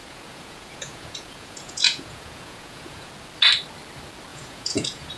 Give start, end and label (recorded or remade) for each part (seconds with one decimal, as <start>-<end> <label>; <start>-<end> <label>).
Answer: 0.0-3.1 remade; 3.1-4.3 recorded; 4.3-5.2 remade